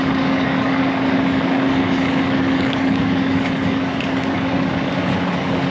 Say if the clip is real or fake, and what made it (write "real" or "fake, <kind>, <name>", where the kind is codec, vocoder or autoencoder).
fake, codec, DAC